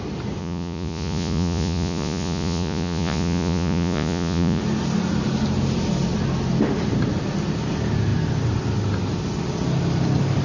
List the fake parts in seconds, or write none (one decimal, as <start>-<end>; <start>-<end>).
0.4-4.6